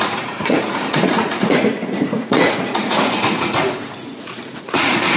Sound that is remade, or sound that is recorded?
remade